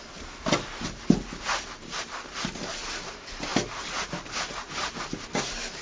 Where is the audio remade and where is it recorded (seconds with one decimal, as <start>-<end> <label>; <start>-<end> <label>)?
0.0-5.8 recorded